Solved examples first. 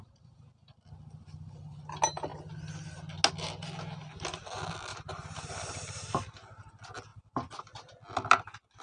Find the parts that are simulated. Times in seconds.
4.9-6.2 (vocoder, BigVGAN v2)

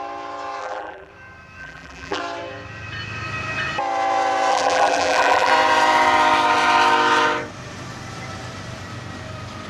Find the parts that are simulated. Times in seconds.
0.6-1.1 (vocoder, BigVGAN v2); 1.6-2.2; 4.5-5.5

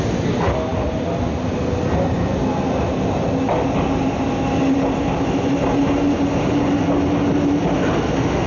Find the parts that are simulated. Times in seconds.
none

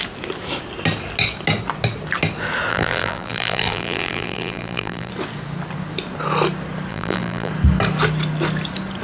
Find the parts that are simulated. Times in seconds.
2.7-5.1 (vocoder, BigVGAN v2); 6.9-7.5

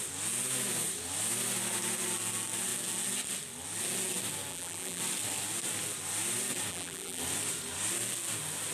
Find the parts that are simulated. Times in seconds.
4.5-5.0 (vocoder, BigVGAN v2); 6.7-7.2

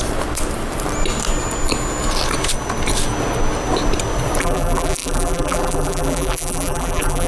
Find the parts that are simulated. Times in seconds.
4.4-7.3 (vocoder, BigVGAN v2)

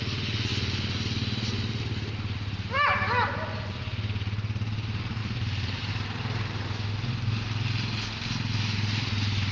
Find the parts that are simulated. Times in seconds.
5.2-5.9 (vocoder, BigVGAN v2)

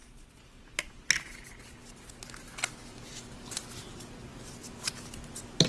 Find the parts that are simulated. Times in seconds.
0.0-0.8 (vocoder, BigVGAN v2)